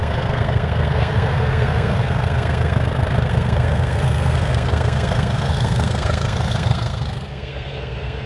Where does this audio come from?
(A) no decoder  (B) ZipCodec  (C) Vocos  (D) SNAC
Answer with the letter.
D